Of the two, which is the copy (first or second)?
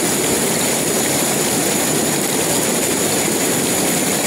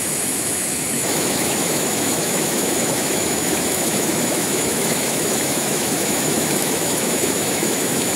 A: second